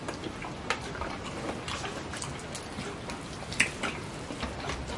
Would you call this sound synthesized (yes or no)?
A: no